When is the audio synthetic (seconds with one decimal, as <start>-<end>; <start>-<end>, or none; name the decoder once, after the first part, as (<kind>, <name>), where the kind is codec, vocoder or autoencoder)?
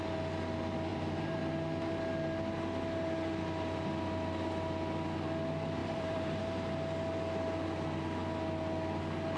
0.9-1.4 (vocoder, BigVGAN v2); 5.8-6.4